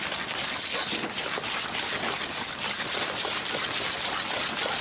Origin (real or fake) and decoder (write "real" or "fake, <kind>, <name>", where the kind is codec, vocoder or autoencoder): real